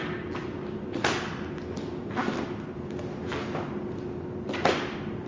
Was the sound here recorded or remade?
recorded